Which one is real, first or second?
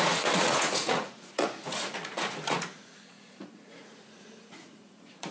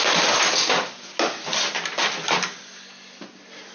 second